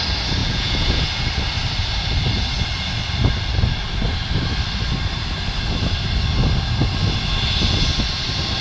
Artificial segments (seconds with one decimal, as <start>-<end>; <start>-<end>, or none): 0.4-1.0